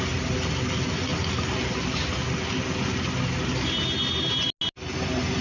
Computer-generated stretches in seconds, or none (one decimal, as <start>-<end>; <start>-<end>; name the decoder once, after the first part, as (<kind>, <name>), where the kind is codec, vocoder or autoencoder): none